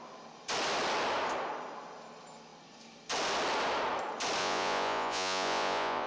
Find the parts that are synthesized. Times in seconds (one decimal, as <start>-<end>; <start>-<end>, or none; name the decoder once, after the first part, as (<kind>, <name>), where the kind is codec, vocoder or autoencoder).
4.4-6.1 (vocoder, Vocos)